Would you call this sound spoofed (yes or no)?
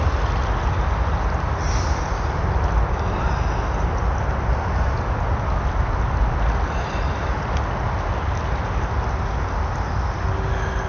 no